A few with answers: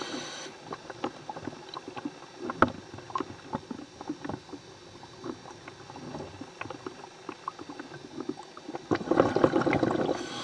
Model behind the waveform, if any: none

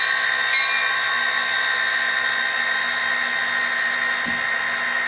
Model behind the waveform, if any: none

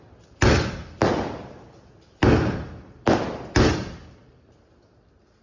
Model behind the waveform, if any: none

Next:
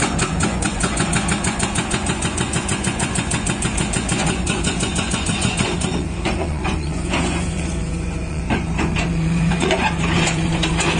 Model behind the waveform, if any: vocoder, Vocos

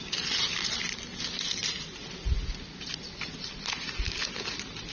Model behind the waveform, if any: none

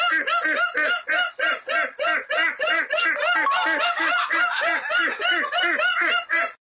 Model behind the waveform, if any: none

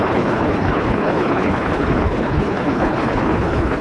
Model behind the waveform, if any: codec, HILCodec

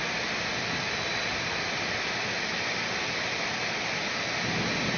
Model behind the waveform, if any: none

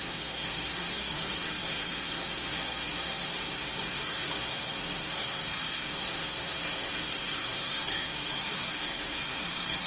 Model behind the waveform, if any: codec, SNAC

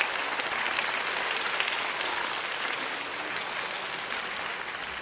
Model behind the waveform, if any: none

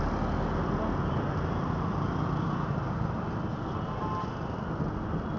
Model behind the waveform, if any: none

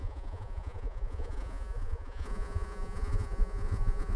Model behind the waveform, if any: vocoder, Vocos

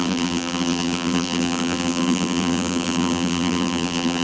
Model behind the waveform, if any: vocoder, BigVGAN v2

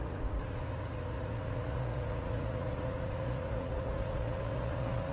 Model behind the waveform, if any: vocoder, Vocos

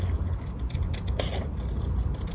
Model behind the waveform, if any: none